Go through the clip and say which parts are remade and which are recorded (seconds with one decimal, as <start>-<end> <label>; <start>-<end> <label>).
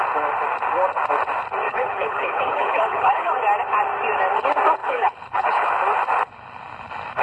0.0-1.7 recorded; 1.7-3.3 remade; 3.3-4.8 recorded; 4.8-5.7 remade; 5.7-7.2 recorded